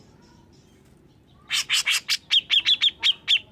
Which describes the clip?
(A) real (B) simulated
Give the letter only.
A